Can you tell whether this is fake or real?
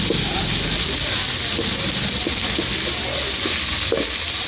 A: real